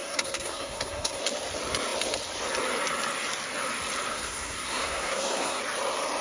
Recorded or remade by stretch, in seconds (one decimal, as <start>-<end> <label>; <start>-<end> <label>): 0.0-1.2 remade; 1.2-4.1 recorded; 4.1-5.6 remade; 5.6-6.2 recorded